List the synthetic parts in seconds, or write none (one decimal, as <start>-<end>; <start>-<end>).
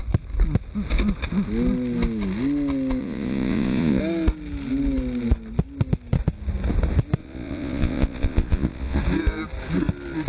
3.0-4.0; 7.2-9.0